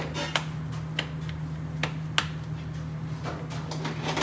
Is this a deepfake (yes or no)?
no